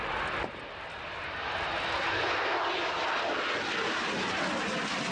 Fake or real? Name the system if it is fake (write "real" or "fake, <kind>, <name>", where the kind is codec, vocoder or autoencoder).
real